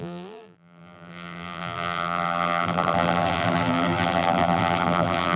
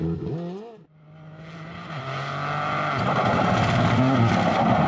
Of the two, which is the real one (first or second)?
second